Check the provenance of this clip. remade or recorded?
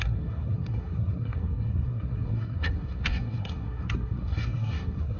remade